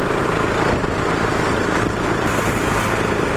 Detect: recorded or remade recorded